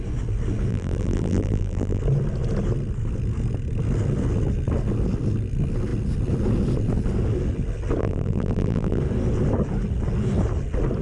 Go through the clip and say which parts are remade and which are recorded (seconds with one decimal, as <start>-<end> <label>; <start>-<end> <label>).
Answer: 0.0-0.7 recorded; 0.7-2.0 remade; 2.0-8.0 recorded; 8.0-9.0 remade; 9.0-11.0 recorded